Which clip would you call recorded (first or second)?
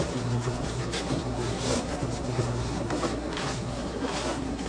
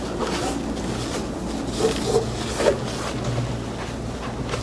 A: second